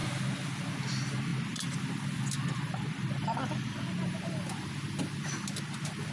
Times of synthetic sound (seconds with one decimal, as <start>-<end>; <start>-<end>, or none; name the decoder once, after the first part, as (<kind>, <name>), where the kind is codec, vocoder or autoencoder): none